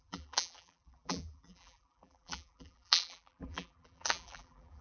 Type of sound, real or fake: fake